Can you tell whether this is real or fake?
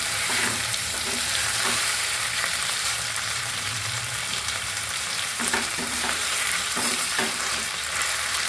fake